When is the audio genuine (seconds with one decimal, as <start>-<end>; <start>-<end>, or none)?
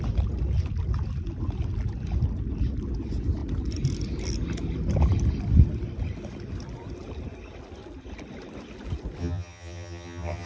0.0-9.2